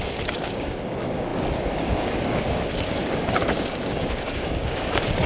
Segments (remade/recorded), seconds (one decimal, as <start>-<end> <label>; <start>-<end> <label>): 0.0-5.3 remade